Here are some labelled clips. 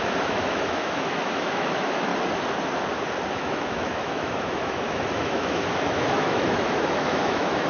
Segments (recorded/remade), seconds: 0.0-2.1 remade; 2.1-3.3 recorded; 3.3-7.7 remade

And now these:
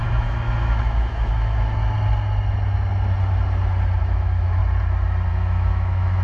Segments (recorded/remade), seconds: 0.0-1.8 remade; 1.8-4.0 recorded; 4.0-4.6 remade; 4.6-5.3 recorded; 5.3-6.2 remade

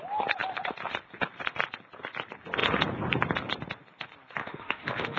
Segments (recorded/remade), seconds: 0.0-4.4 recorded; 4.4-5.2 remade